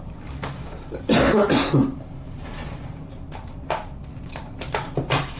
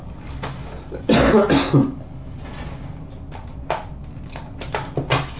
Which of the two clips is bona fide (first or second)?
second